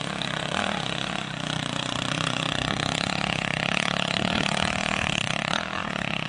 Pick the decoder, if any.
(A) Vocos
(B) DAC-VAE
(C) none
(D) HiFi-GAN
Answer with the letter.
A